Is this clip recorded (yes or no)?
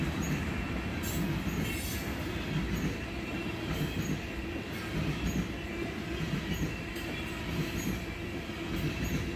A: yes